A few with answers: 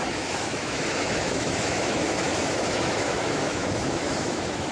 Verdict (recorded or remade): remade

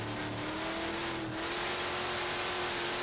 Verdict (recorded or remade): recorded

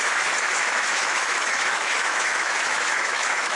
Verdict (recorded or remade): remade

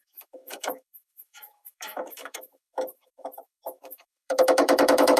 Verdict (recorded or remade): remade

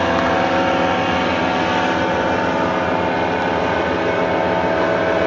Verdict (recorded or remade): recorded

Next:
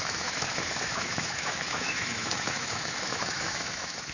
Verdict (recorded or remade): remade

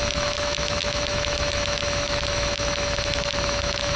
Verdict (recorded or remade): remade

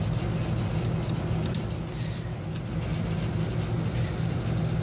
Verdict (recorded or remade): recorded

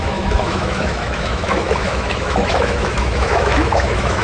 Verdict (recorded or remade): remade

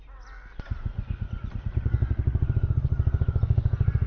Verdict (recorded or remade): recorded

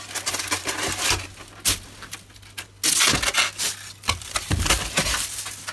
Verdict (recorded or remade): recorded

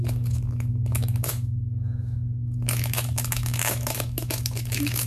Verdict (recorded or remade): remade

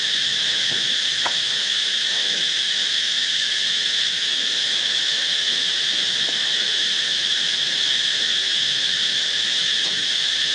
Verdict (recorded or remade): remade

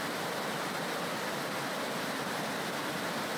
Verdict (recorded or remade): recorded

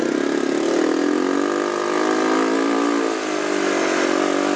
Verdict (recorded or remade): recorded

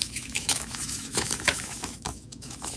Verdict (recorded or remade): remade